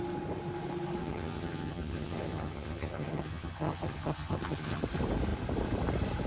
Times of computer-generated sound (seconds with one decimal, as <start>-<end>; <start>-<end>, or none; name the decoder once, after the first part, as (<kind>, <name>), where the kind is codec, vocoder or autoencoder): 1.0-4.8 (vocoder, HiFi-GAN)